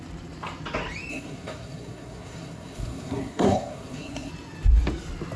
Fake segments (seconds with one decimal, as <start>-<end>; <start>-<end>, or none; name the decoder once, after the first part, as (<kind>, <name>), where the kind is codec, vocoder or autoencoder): 1.1-4.3 (codec, SNAC)